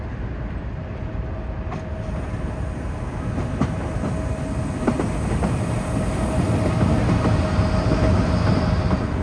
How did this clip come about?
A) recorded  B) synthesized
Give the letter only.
A